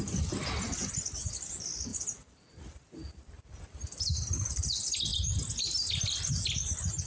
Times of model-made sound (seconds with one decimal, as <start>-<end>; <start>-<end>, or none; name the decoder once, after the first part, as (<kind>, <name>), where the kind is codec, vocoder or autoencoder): none